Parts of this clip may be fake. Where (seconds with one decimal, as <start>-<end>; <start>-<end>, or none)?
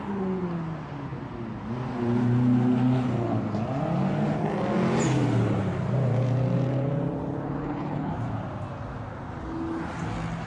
7.6-8.1